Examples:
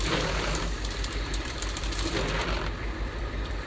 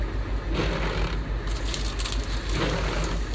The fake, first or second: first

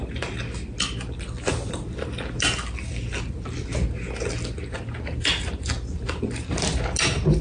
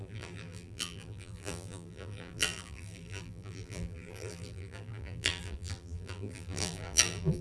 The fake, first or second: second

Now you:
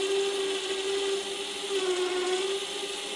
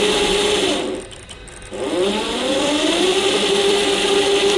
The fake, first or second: second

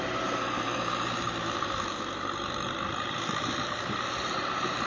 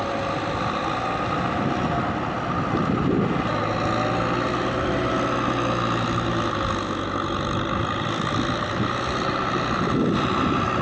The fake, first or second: first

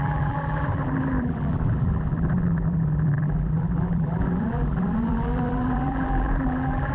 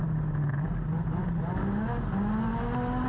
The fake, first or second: first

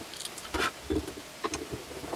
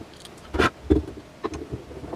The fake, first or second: first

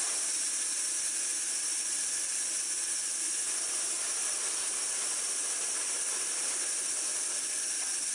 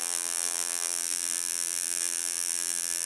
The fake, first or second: second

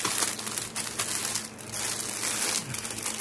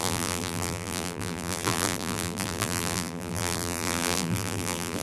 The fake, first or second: second